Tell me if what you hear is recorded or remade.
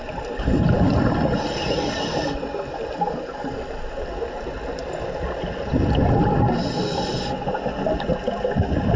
recorded